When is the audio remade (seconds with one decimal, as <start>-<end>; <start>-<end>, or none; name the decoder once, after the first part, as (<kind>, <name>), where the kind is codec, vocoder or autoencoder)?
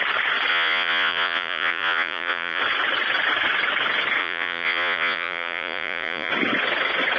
0.5-2.6 (vocoder, Vocos); 4.2-6.3